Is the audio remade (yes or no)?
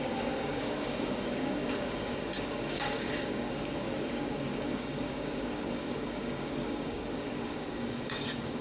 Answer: yes